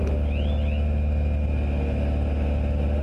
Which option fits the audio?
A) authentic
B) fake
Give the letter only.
A